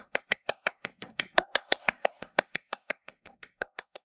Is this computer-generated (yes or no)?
yes